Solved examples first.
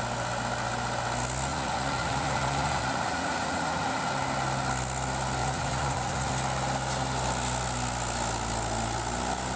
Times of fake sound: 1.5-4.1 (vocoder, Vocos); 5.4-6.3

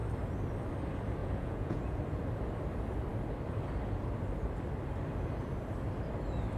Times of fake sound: 1.2-2.0 (vocoder, Vocos)

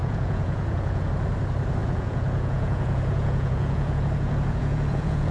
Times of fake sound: 0.0-1.1 (vocoder, Vocos); 1.8-5.3

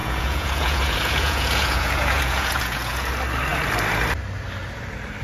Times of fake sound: 0.0-3.1 (vocoder, Vocos)

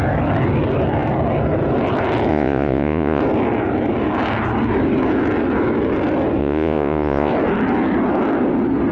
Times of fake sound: 2.3-3.2 (vocoder, Vocos); 6.4-7.3

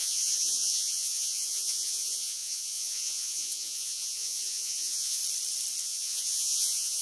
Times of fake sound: 0.0-5.2 (vocoder, Vocos); 5.8-7.0

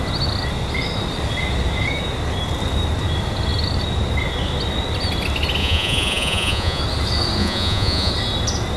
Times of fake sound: 5.6-6.8 (vocoder, Vocos); 7.4-8.1

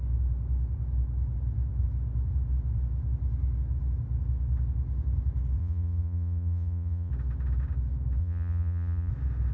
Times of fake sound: 5.6-7.1 (vocoder, Vocos); 8.2-9.1